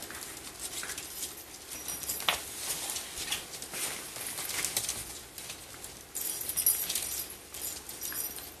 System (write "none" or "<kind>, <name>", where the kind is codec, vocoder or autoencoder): none